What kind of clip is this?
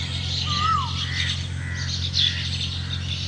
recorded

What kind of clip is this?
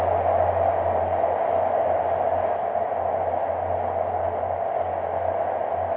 recorded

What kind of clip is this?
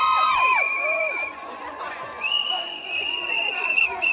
remade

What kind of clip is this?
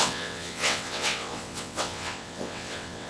remade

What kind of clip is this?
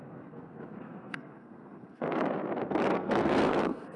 remade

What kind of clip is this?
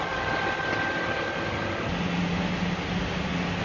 recorded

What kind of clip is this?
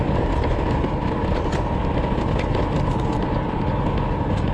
recorded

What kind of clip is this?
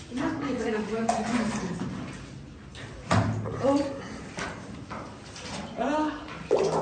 recorded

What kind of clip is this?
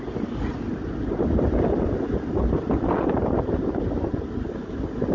recorded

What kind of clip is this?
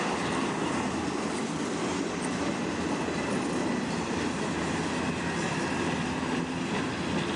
recorded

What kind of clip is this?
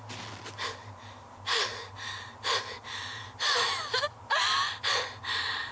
recorded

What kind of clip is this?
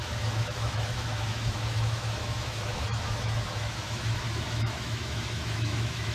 remade